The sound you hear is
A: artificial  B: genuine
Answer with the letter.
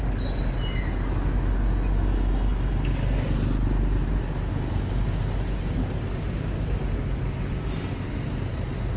B